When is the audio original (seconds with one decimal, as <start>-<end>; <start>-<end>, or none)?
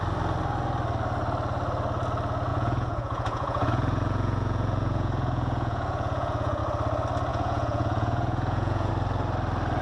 0.0-2.5; 6.6-7.3; 8.9-9.8